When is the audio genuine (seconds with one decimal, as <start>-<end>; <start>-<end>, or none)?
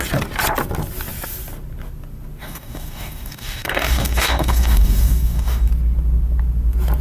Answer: 0.0-2.4; 5.7-7.0